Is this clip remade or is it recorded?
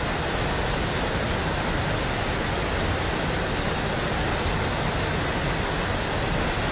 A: recorded